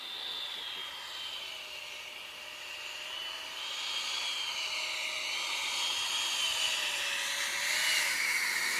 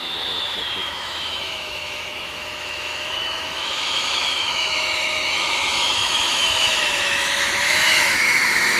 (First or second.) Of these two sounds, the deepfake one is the second